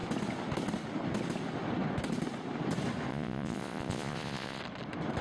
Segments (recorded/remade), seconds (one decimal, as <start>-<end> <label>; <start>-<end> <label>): 0.0-3.1 recorded; 3.1-4.6 remade; 4.6-5.2 recorded